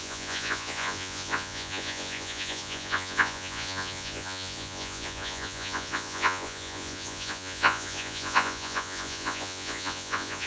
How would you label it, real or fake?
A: fake